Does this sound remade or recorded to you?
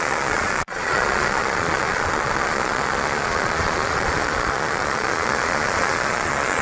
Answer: remade